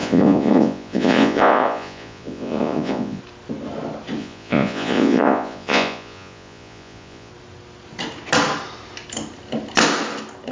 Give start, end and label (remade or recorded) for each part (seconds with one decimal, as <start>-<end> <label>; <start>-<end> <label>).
0.0-3.2 remade; 3.2-4.2 recorded; 4.2-7.3 remade; 7.3-10.5 recorded